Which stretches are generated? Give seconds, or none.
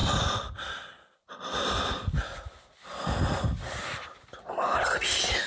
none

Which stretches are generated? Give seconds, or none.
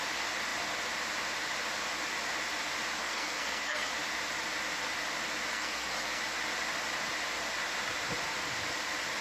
3.0-3.9 (codec, SNAC); 5.5-6.2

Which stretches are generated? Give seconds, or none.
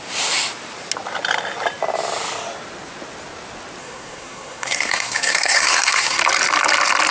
3.8-6.2 (codec, SNAC)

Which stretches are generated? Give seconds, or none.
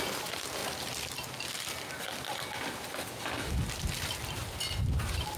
0.0-0.6 (vocoder, BigVGAN v2); 3.8-5.4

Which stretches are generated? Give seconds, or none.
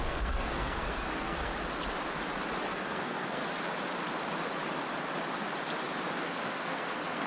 0.0-1.5 (codec, SNAC); 2.7-3.4; 6.2-7.3